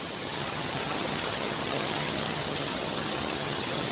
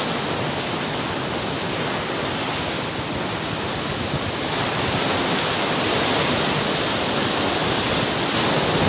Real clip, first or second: second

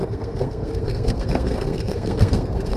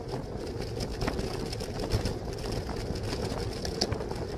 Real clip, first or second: second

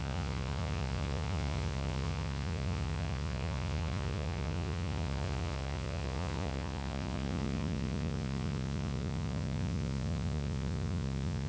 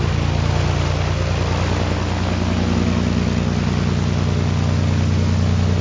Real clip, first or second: second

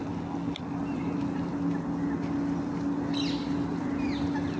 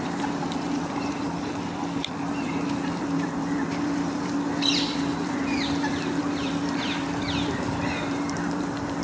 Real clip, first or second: first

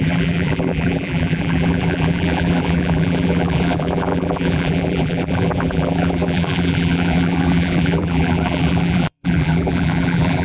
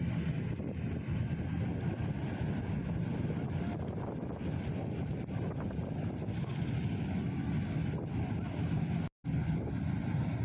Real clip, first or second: second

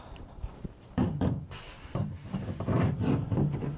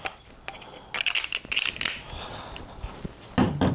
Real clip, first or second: second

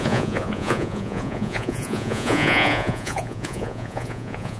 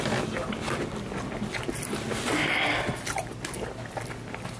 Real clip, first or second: second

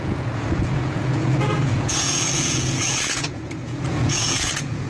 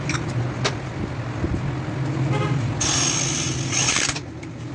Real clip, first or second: second